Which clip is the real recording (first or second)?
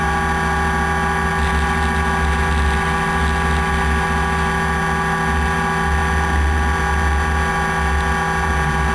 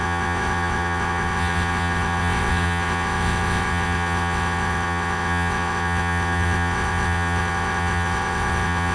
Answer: first